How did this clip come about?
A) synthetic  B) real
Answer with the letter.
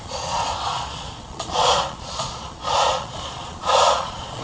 A